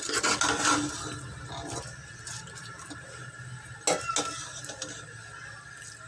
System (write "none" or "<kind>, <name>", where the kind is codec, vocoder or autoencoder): none